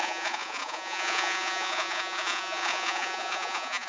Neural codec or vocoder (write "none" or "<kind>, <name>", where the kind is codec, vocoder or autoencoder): vocoder, Vocos